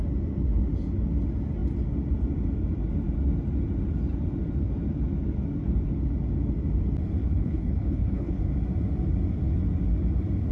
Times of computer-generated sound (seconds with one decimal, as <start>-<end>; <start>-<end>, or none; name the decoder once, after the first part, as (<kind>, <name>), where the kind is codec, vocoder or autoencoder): 7.2-8.4 (codec, HILCodec)